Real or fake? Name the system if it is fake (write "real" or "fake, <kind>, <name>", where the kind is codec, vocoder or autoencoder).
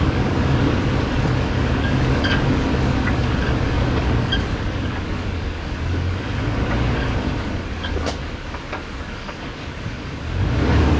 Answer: fake, codec, DAC